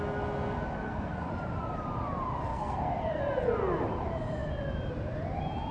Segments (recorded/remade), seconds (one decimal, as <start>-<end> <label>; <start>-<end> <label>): 0.0-0.8 recorded; 0.8-1.3 remade; 1.3-2.5 recorded; 2.5-3.2 remade; 3.2-5.7 recorded